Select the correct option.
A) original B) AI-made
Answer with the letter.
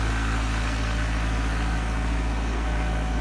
B